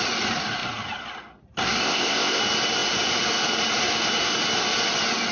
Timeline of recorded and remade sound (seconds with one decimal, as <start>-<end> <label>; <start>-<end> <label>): 0.0-1.8 recorded; 1.8-2.4 remade; 2.4-5.3 recorded